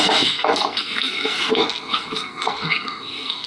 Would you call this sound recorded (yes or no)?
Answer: no